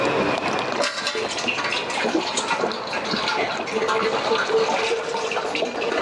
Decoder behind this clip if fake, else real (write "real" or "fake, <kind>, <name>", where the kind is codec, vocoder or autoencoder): real